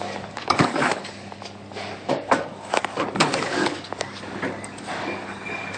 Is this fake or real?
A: fake